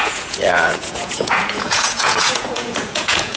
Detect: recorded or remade remade